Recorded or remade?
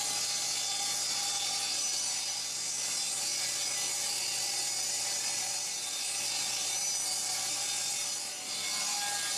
recorded